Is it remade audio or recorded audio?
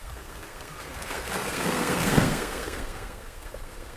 remade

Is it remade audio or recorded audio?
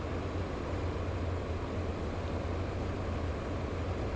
recorded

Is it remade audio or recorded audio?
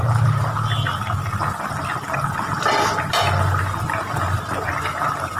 recorded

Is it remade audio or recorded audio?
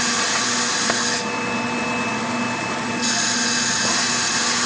recorded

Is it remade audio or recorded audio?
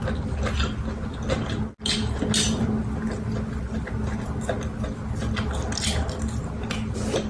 recorded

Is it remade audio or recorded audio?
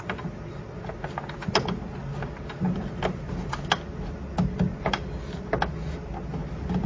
recorded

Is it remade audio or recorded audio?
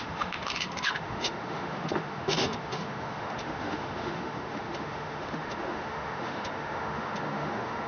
remade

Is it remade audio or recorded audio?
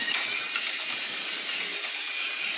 recorded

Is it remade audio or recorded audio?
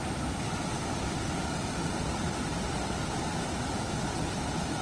recorded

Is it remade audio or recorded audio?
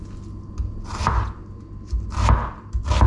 recorded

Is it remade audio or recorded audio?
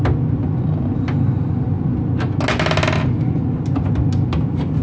recorded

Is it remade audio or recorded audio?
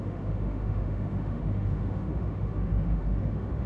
remade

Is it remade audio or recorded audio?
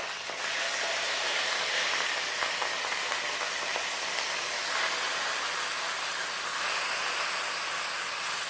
recorded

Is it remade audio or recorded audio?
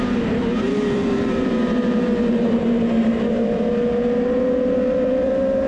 remade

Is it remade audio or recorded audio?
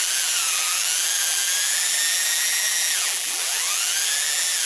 remade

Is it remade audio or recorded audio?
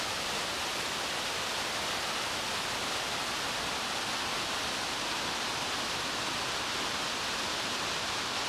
recorded